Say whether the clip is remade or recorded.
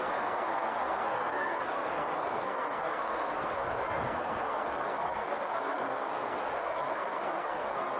remade